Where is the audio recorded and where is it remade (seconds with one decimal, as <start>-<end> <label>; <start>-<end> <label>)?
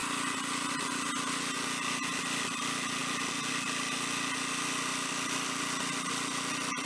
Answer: 0.0-6.9 recorded